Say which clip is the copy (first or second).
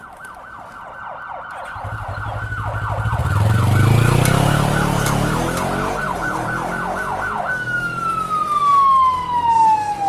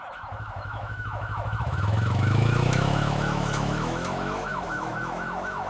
second